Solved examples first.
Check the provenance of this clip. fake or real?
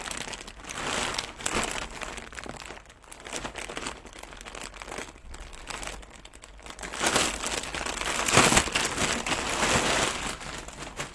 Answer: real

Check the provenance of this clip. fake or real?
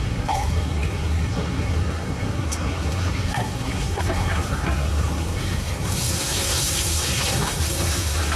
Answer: fake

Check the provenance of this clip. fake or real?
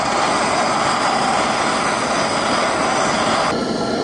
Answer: real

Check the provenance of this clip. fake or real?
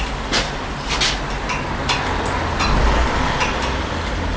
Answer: real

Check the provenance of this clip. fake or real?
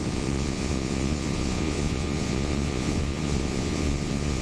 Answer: fake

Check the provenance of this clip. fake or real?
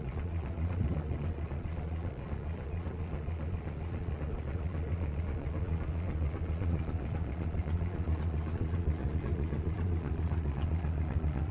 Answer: fake